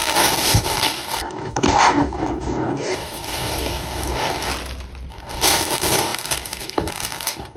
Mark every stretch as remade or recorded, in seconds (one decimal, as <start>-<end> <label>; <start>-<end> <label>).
0.0-4.5 remade; 4.5-5.1 recorded; 5.1-7.6 remade